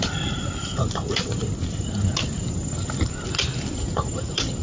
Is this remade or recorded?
recorded